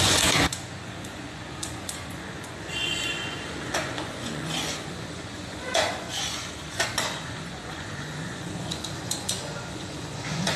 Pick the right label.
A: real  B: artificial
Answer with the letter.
B